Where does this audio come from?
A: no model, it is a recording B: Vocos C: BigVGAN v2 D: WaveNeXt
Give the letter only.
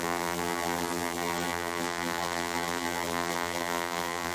C